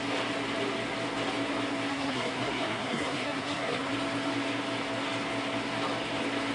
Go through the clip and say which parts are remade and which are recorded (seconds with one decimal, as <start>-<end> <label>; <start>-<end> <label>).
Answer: 0.0-1.9 recorded; 1.9-3.9 remade; 3.9-6.5 recorded